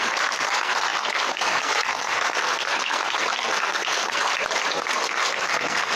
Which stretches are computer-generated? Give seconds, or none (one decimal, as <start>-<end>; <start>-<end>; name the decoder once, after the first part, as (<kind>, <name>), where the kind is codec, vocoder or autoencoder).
0.0-4.3 (codec, SNAC); 4.9-6.0